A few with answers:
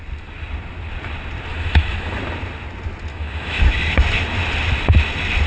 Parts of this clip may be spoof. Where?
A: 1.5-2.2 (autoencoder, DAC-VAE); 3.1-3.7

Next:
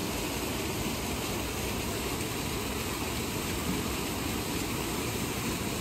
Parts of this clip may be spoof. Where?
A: 3.6-5.3 (vocoder, BigVGAN v2)